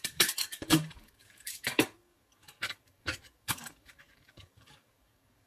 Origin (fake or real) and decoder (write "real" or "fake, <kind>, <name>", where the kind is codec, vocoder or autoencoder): fake, codec, DAC